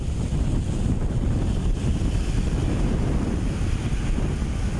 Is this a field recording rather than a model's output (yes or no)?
yes